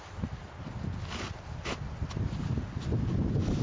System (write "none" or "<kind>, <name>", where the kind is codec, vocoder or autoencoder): none